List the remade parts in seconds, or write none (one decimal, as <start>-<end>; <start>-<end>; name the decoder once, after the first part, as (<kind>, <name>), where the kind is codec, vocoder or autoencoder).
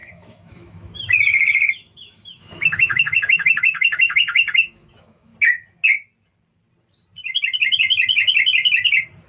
0.0-5.3 (autoencoder, DAC-VAE)